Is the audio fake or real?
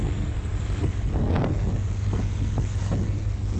fake